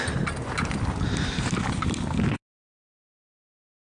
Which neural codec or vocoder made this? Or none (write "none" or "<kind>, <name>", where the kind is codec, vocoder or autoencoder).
none